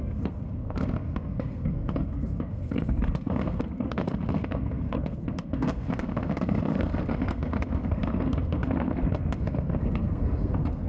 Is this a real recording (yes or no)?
no